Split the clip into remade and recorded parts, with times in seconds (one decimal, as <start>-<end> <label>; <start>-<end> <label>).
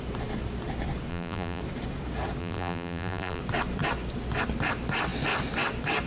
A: 0.0-1.1 recorded; 1.1-1.6 remade; 1.6-2.4 recorded; 2.4-3.4 remade; 3.4-6.1 recorded